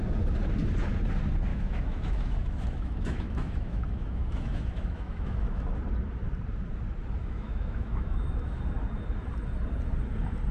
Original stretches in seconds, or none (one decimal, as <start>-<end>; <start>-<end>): 0.0-1.5; 5.7-7.2; 8.6-10.5